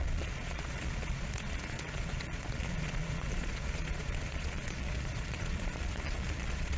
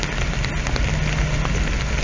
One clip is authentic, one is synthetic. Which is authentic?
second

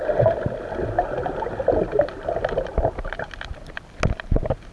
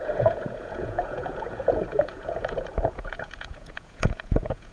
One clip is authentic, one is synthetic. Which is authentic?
first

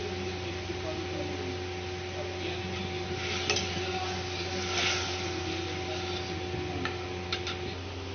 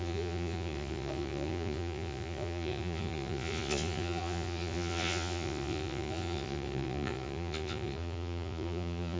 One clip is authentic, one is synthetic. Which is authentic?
first